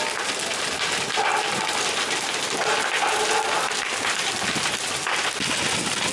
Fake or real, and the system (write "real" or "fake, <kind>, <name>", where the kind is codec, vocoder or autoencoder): real